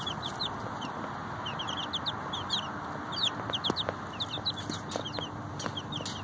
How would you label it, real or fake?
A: real